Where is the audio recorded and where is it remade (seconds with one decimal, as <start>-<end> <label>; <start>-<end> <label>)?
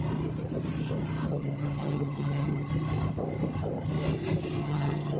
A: 0.0-1.3 recorded; 1.3-2.7 remade; 2.7-4.6 recorded; 4.6-5.2 remade